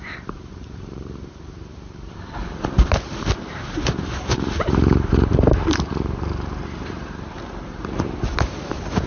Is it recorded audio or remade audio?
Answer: remade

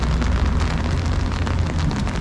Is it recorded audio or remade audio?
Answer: recorded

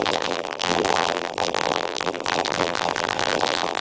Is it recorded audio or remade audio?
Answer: remade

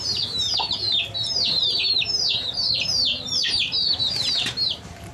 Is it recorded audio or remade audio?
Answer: remade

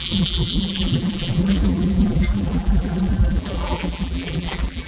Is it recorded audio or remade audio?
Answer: remade